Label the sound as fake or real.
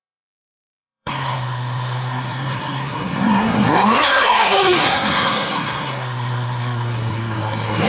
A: fake